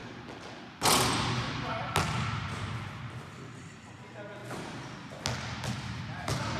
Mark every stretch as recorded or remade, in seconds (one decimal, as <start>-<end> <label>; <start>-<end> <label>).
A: 0.0-6.6 recorded